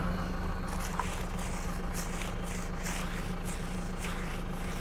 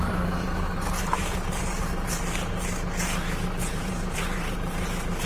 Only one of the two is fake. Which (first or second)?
second